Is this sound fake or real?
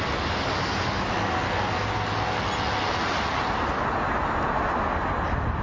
real